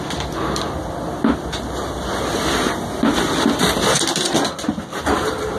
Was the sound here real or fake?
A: real